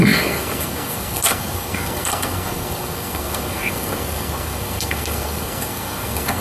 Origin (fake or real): fake